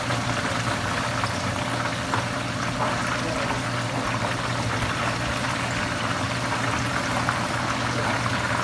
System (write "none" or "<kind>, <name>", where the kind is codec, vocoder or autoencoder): none